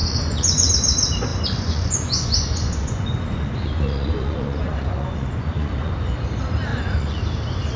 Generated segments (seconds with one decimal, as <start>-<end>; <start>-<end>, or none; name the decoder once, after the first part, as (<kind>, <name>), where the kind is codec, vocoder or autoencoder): 0.0-0.7 (vocoder, Vocos); 1.3-5.9; 6.7-7.2